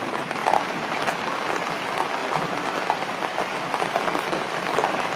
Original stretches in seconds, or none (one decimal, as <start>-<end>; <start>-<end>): 0.0-0.4; 1.3-5.2